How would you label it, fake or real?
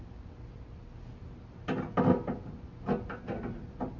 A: real